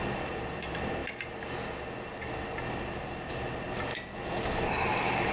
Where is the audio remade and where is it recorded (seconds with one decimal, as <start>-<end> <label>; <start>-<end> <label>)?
0.0-5.3 recorded